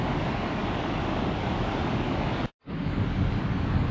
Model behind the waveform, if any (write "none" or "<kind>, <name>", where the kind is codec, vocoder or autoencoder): codec, DAC